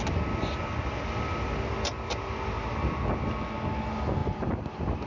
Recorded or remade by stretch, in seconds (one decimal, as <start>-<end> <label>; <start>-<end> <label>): 0.0-5.1 recorded